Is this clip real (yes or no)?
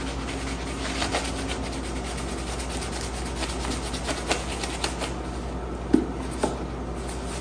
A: yes